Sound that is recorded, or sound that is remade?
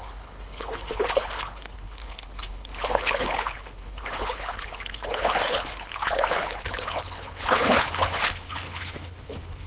remade